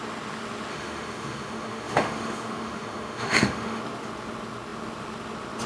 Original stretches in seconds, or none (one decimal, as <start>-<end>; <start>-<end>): 0.0-0.7; 3.8-5.7